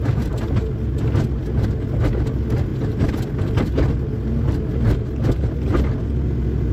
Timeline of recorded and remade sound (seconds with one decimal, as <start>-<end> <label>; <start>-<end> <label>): 0.0-6.7 recorded